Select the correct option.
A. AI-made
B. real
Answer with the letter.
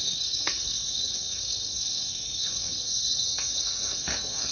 A